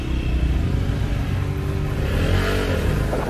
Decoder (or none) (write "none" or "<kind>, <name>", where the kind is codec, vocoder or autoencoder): none